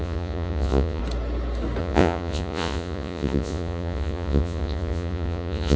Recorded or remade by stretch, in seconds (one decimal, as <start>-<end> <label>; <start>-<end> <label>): 0.0-1.0 remade; 1.0-1.8 recorded; 1.8-5.8 remade